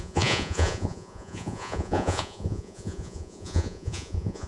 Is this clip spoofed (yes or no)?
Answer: yes